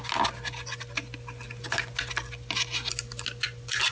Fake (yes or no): no